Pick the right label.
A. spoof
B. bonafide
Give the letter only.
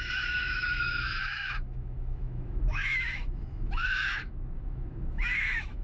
A